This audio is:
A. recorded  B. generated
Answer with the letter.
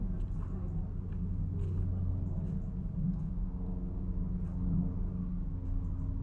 A